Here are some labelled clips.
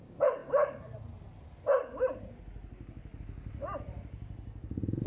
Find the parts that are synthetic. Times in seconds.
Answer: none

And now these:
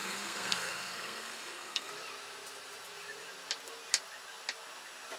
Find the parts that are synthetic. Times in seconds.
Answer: 0.0-1.9

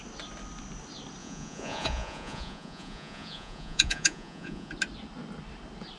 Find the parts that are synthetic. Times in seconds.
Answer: 1.2-4.7

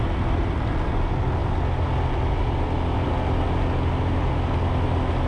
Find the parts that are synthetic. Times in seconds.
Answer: none

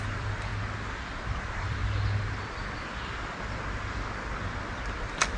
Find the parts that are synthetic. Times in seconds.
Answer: 0.0-0.5; 1.4-1.8; 5.0-5.4

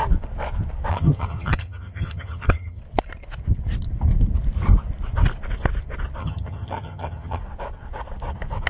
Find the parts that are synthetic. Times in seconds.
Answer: 0.9-2.8; 6.2-7.4

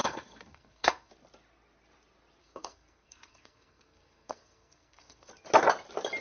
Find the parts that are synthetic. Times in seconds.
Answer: 0.0-1.1; 2.4-5.3